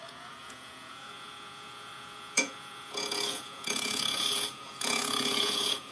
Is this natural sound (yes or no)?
no